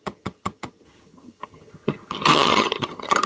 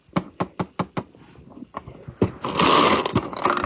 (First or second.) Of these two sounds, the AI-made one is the first